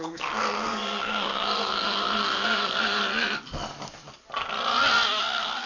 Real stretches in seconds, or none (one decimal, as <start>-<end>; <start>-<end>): 3.0-5.2